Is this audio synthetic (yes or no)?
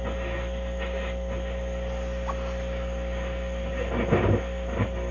no